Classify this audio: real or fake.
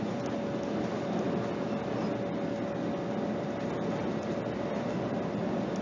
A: real